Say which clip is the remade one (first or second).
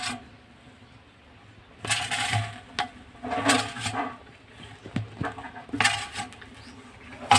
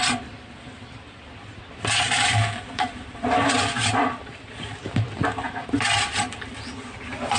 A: second